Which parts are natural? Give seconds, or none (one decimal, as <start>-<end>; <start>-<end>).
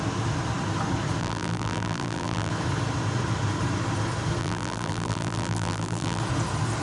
0.0-1.2; 2.5-4.4; 6.2-6.8